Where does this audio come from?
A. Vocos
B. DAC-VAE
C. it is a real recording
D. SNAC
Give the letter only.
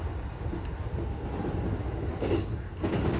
C